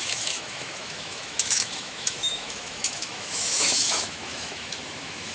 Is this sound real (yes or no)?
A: no